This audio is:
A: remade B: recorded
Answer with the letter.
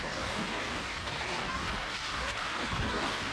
A